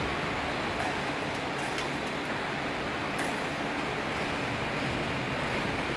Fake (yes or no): no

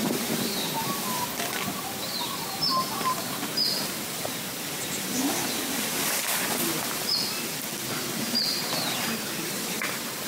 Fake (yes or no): no